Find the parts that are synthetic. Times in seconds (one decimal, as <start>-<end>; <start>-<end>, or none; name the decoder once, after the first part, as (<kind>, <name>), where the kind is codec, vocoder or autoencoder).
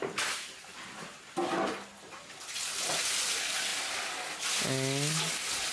none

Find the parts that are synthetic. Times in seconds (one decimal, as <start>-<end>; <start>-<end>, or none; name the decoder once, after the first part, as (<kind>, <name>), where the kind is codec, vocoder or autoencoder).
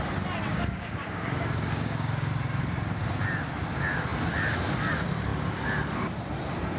0.5-2.3 (codec, DAC)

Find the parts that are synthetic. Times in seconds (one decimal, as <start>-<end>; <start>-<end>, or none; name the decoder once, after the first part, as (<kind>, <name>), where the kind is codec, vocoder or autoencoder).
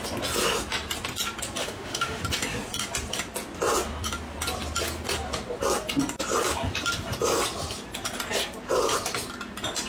1.6-2.2 (autoencoder, DAC-VAE)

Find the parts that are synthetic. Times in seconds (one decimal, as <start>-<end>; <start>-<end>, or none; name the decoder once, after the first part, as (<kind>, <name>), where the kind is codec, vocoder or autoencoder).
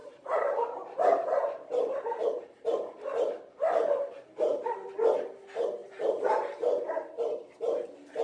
0.0-4.9 (vocoder, BigVGAN v2); 5.8-8.2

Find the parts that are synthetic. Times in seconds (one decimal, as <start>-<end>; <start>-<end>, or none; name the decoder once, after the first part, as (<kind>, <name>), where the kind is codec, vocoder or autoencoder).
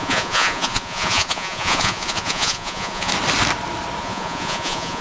0.0-3.1 (vocoder, Vocos); 4.0-5.0